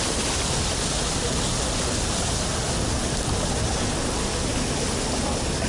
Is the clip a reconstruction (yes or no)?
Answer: no